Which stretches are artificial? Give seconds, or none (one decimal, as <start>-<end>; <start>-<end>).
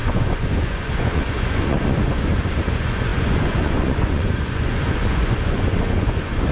0.0-6.5